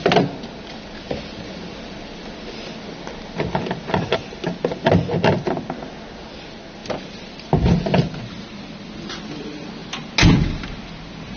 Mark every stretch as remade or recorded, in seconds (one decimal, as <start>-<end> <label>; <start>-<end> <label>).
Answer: 0.0-11.4 recorded